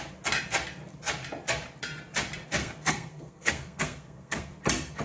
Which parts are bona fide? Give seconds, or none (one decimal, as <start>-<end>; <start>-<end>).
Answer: 0.0-2.6; 4.5-5.0